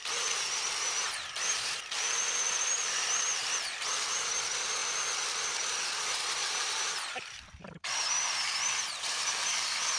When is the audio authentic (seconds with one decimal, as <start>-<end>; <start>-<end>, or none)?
none